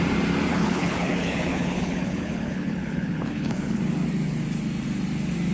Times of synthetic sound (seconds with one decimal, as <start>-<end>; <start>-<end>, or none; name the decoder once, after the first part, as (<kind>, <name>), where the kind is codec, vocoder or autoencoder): 0.5-3.8 (codec, HILCodec)